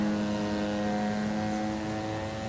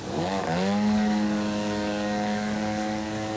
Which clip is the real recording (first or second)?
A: first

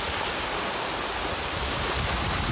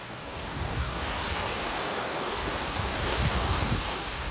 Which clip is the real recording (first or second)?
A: first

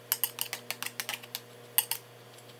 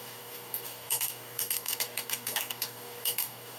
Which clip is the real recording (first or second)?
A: first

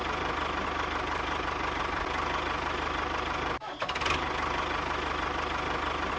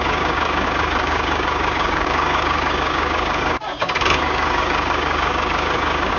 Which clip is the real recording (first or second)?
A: first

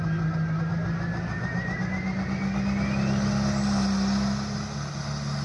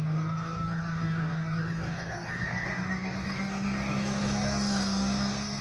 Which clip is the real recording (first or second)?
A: first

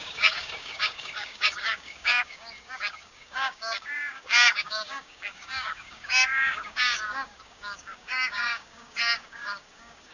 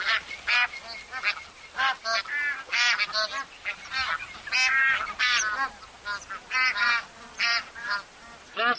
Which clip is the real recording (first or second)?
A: second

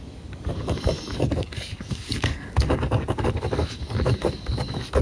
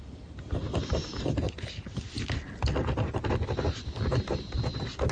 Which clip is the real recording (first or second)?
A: second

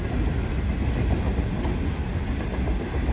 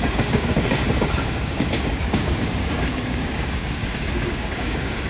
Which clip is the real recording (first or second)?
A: first